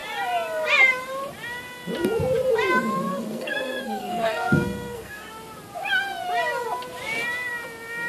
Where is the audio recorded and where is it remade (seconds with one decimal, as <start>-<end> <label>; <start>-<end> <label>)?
0.0-3.1 recorded; 3.1-5.3 remade; 5.3-8.1 recorded